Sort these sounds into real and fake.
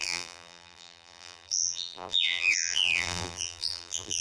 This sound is fake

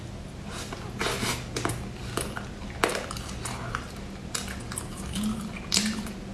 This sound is real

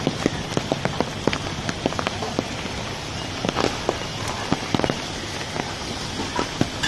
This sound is real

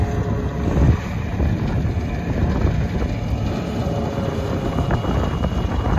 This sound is real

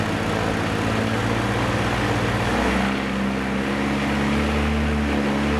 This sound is real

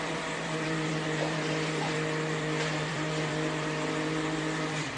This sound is fake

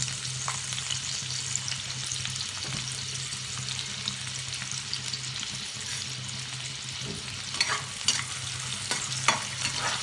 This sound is real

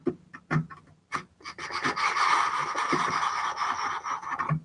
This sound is real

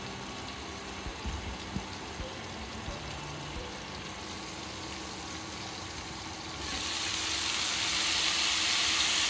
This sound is fake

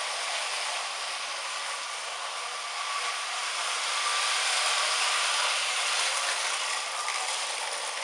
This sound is fake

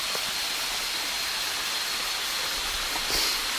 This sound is real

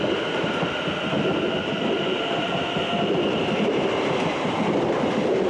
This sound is real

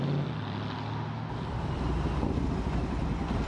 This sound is real